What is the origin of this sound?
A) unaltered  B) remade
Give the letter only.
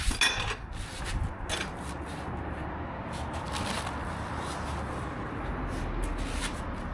A